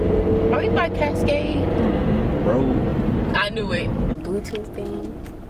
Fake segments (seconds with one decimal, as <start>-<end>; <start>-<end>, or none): 1.5-2.3; 2.9-4.1